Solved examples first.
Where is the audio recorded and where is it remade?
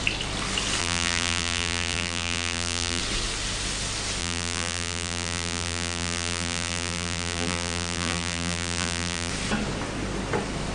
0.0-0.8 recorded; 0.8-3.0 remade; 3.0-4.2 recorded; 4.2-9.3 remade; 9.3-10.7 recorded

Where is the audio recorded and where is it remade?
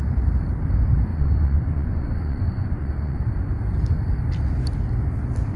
0.0-1.1 recorded; 1.1-3.5 remade; 3.5-5.6 recorded